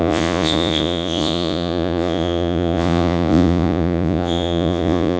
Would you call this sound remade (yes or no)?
yes